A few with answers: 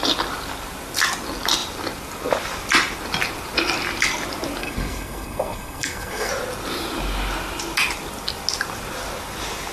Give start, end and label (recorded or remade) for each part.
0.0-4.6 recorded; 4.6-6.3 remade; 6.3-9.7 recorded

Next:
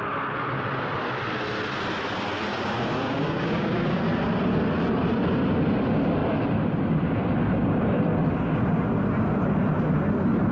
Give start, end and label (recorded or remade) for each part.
0.0-2.5 recorded; 2.5-4.0 remade; 4.0-10.5 recorded

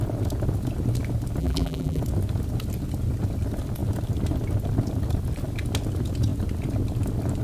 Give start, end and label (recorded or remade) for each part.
0.0-1.4 recorded; 1.4-2.0 remade; 2.0-7.4 recorded

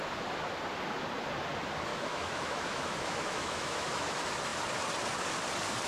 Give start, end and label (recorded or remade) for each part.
0.0-1.9 recorded; 1.9-4.1 remade; 4.1-5.9 recorded